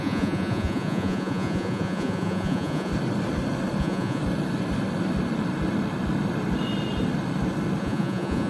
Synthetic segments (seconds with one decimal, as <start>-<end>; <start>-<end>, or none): 0.0-2.9; 3.8-4.2; 7.8-8.5

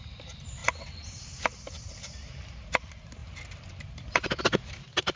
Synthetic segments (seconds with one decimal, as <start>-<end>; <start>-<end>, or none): none

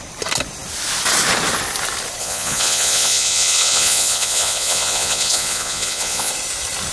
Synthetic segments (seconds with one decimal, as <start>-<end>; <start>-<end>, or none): 2.2-6.3